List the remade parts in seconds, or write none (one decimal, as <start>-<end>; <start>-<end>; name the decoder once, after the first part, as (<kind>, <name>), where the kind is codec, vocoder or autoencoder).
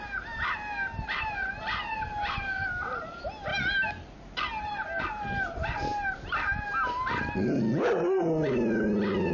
none